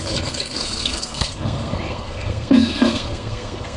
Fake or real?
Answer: fake